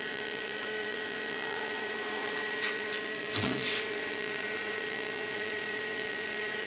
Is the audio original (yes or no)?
no